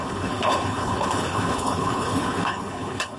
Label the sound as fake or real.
fake